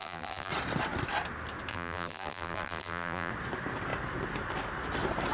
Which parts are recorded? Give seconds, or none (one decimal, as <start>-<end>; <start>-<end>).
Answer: 0.5-1.7; 3.3-5.3